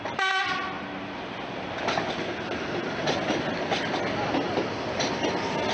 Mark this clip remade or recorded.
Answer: recorded